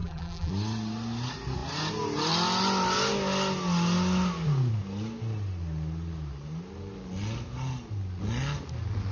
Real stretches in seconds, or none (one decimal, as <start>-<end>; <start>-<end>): 0.5-9.1